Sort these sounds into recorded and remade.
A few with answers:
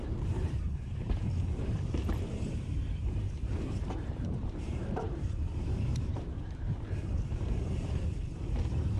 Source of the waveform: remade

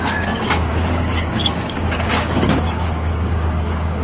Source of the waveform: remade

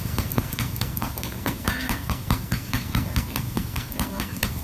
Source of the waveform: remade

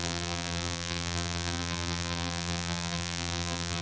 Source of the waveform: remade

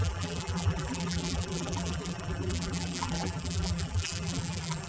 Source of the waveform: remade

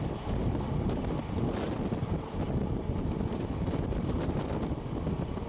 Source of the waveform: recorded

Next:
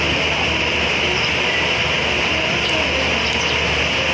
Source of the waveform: recorded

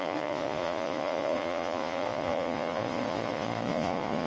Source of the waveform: remade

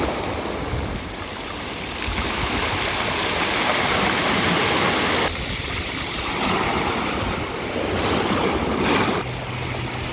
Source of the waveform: recorded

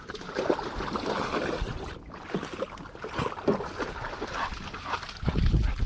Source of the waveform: remade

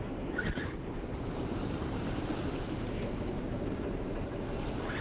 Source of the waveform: remade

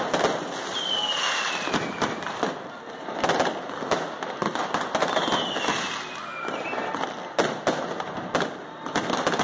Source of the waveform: recorded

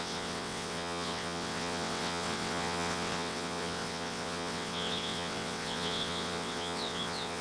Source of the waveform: remade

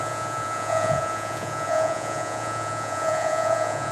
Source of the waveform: remade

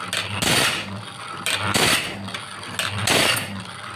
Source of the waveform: recorded